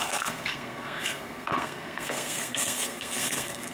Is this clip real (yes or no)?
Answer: no